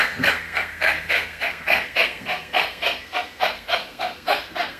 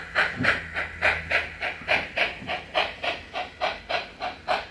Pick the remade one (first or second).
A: first